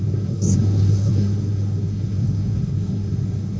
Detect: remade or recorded remade